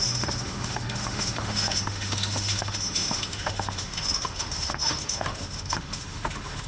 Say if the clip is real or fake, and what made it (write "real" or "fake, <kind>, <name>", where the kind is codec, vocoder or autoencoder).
fake, autoencoder, DAC-VAE